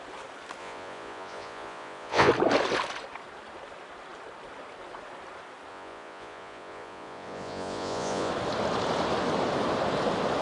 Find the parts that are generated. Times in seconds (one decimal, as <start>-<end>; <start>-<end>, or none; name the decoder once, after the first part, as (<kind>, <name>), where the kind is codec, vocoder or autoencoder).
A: 0.6-2.3 (vocoder, Vocos); 5.7-8.3